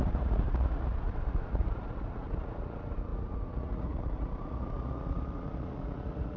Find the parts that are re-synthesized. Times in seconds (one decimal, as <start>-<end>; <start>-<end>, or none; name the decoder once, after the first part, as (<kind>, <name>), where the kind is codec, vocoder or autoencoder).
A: 0.0-6.4 (vocoder, Vocos)